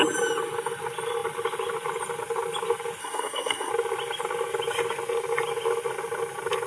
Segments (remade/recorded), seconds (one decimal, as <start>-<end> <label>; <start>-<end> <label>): 0.0-3.0 recorded; 3.0-3.7 remade; 3.7-6.7 recorded